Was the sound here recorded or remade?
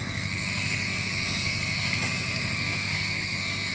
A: remade